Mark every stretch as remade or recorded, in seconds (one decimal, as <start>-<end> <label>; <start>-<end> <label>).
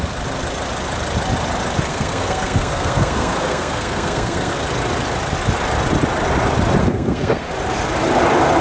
0.0-1.9 recorded; 1.9-4.6 remade; 4.6-6.8 recorded; 6.8-7.5 remade; 7.5-8.6 recorded